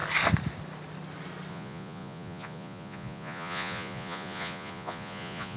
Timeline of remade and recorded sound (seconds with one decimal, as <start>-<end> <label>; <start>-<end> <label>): 0.0-1.5 recorded; 1.5-5.6 remade